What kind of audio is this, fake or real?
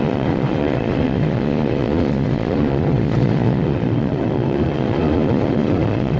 fake